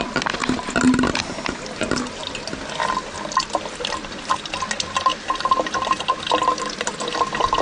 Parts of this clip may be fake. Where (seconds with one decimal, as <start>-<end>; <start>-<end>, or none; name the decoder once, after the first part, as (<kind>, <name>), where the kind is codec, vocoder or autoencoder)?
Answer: none